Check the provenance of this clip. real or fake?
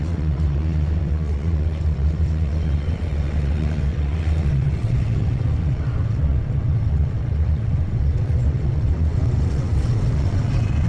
fake